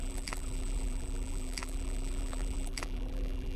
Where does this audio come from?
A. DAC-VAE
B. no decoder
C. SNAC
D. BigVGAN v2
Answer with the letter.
D